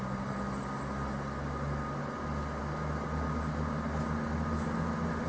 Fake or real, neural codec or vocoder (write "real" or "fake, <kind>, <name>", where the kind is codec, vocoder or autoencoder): real